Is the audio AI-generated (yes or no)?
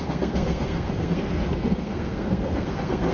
yes